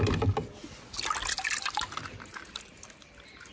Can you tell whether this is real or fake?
real